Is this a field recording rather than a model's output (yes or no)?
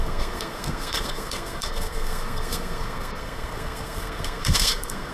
no